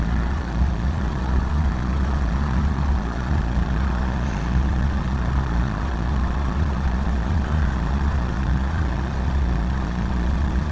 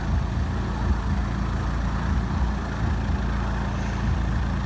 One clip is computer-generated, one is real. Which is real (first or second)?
second